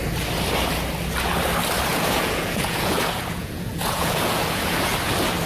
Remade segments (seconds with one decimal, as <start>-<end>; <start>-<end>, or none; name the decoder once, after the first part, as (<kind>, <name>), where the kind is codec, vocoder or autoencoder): 1.9-4.9 (vocoder, Vocos)